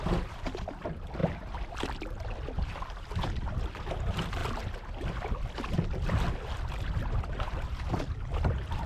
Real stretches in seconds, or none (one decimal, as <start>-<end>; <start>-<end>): 1.2-3.8